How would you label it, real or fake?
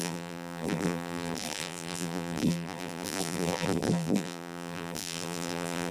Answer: fake